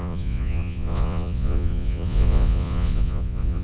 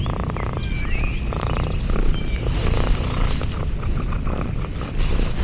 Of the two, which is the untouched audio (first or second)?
second